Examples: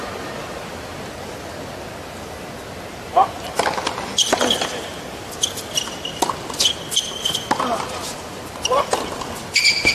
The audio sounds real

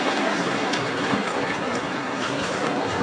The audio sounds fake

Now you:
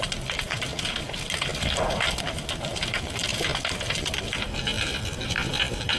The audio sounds real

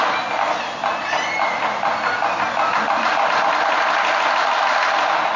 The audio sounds real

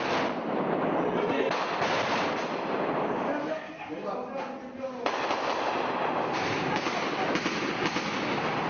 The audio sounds real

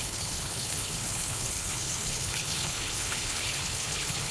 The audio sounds fake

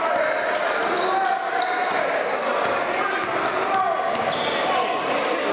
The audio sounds real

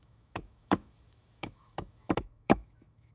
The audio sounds fake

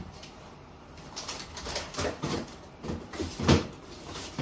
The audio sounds fake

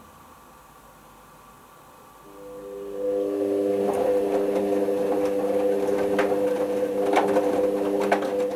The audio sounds real